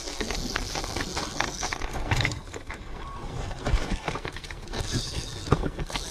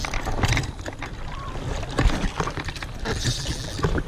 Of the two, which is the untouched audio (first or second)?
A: second